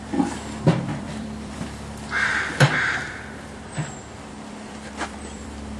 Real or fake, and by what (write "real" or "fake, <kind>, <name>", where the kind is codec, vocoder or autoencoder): fake, vocoder, BigVGAN v2